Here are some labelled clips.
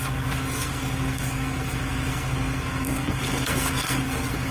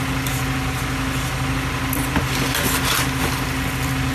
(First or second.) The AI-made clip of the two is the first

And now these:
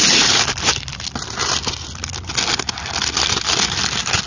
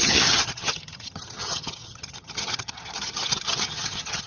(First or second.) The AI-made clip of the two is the second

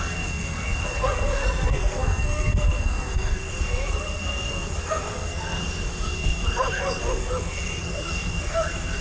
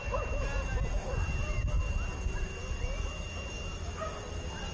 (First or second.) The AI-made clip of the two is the first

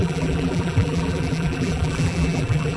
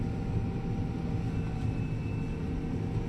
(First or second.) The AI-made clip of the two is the first